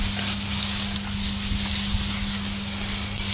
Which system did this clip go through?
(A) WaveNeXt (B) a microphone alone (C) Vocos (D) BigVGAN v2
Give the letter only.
B